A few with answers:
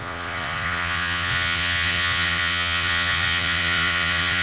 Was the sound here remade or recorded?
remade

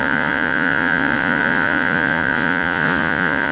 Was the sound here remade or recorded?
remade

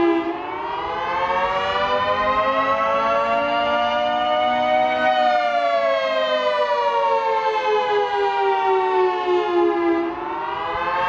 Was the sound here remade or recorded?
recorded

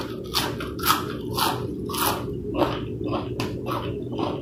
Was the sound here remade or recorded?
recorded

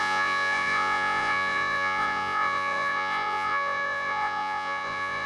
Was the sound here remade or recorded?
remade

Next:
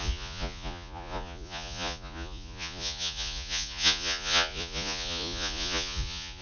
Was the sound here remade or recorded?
remade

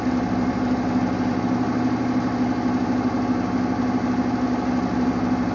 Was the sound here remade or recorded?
recorded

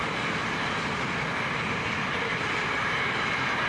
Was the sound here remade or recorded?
recorded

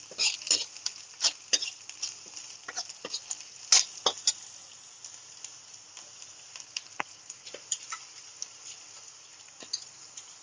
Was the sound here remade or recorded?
recorded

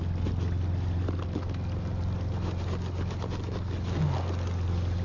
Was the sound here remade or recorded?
recorded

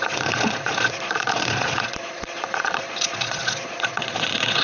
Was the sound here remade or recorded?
remade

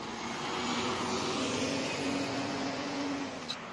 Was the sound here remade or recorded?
remade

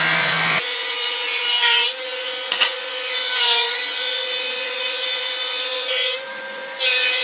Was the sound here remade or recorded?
remade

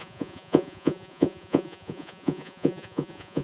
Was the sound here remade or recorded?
remade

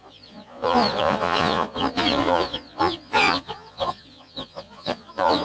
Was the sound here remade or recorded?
remade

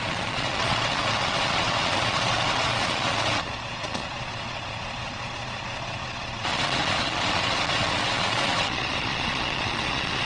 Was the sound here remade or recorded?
remade